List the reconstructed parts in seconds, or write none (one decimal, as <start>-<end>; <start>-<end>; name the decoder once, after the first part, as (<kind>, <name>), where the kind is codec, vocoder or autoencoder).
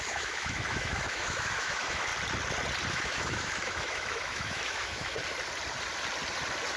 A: 0.0-2.1 (autoencoder, DAC-VAE); 2.9-5.2